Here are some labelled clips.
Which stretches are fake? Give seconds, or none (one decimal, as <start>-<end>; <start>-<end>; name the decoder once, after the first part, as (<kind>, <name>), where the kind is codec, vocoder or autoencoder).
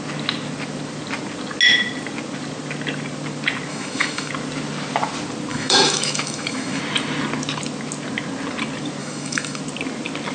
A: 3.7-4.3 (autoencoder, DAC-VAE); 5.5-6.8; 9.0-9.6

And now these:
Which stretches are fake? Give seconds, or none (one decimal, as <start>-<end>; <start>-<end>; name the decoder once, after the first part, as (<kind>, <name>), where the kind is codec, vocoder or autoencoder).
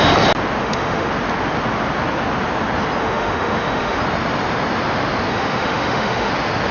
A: 0.6-1.1 (autoencoder, DAC-VAE); 3.0-4.0; 5.3-6.3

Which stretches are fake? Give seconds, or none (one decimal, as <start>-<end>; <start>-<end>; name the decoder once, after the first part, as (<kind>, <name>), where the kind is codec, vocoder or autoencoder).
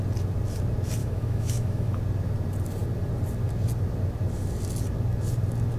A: 1.0-2.0 (autoencoder, DAC-VAE)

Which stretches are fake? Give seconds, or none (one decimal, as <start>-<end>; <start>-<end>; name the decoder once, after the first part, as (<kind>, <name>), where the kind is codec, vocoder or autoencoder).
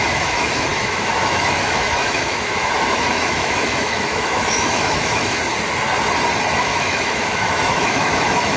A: 0.0-5.4 (autoencoder, DAC-VAE); 6.6-8.6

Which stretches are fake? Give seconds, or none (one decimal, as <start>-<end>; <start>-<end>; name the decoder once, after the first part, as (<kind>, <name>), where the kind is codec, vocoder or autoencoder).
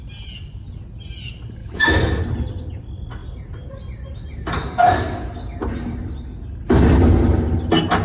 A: 1.6-2.2 (autoencoder, DAC-VAE)